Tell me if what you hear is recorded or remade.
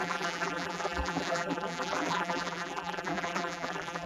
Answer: remade